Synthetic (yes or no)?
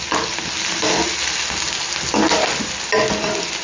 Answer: no